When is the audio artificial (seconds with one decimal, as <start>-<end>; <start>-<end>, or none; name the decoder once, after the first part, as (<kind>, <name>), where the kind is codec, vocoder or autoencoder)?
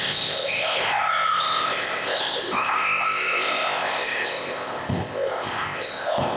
0.0-6.4 (codec, ZipCodec)